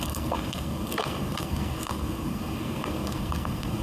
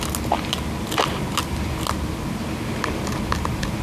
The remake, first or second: first